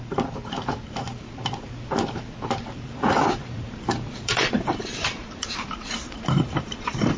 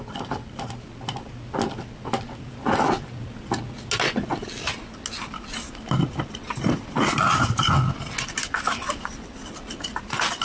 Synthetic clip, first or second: first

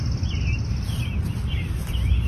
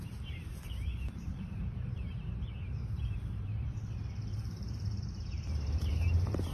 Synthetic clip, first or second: second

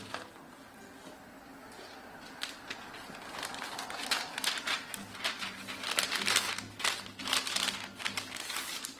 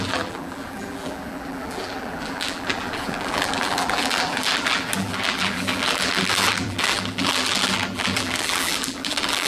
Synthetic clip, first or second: second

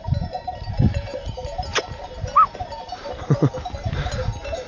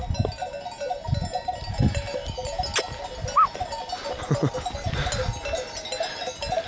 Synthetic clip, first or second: first